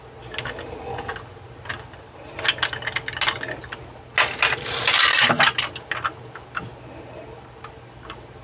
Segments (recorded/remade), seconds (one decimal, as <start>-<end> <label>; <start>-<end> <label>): 0.0-8.4 recorded